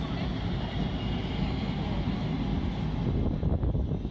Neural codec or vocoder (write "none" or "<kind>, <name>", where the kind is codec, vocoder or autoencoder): none